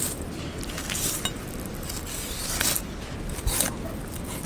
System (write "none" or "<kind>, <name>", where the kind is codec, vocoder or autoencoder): none